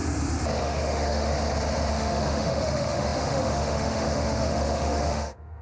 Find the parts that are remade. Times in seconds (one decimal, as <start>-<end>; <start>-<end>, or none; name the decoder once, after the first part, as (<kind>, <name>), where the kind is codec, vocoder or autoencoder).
0.6-1.3 (autoencoder, DAC-VAE); 1.9-5.6